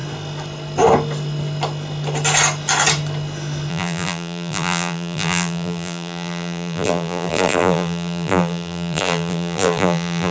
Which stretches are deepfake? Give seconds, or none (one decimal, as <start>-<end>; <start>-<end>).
3.7-10.3